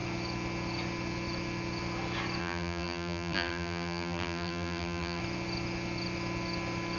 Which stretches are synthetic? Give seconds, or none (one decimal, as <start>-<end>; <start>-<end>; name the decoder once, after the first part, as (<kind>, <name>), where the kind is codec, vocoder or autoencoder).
2.4-5.2 (vocoder, BigVGAN v2)